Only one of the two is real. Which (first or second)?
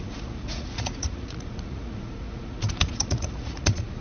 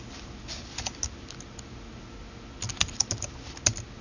second